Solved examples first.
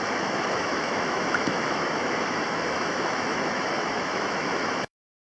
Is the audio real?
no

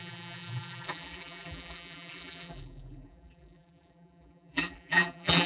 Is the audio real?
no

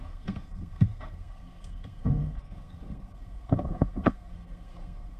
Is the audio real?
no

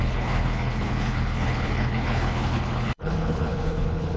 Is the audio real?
no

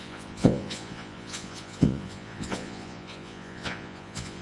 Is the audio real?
no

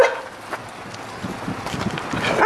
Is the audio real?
yes